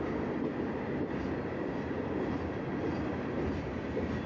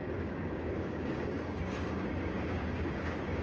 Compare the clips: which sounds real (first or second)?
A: first